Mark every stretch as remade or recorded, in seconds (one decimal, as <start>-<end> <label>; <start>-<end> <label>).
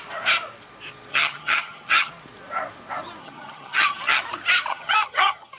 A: 0.0-1.1 recorded; 1.1-2.1 remade; 2.1-3.2 recorded; 3.2-4.2 remade; 4.2-4.7 recorded; 4.7-5.6 remade